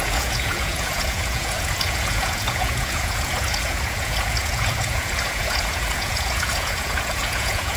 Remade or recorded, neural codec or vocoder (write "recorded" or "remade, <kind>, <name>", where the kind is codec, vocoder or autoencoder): remade, vocoder, Vocos